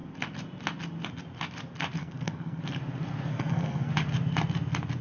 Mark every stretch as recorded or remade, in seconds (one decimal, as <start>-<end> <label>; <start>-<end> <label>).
0.0-2.0 recorded; 2.0-2.6 remade; 2.6-3.3 recorded; 3.3-3.9 remade; 3.9-5.0 recorded